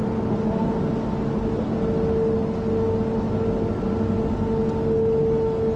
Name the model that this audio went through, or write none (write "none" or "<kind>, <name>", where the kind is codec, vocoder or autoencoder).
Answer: none